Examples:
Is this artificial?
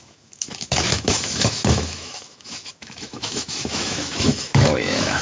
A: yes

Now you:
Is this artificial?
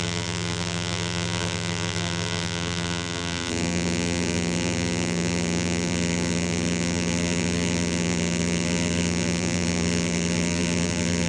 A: yes